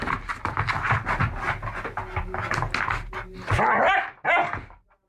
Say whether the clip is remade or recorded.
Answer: recorded